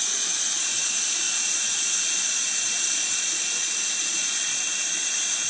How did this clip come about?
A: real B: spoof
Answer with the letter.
B